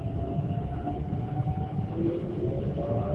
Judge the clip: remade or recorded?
remade